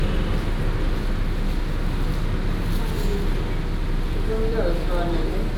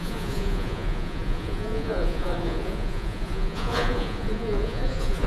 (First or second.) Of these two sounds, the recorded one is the first